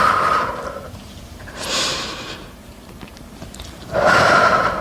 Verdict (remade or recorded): remade